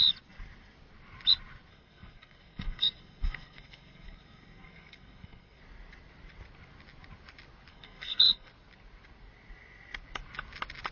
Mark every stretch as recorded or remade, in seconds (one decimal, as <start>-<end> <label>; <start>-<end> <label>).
0.0-1.7 recorded; 1.7-5.6 remade; 5.6-7.7 recorded; 7.7-8.5 remade; 8.5-10.9 recorded